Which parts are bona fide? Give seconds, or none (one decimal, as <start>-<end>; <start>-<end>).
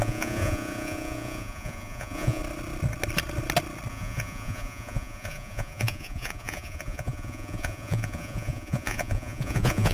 2.4-3.9